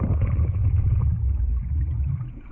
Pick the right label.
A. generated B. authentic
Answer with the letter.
A